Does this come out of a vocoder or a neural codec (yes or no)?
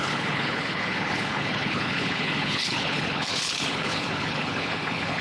yes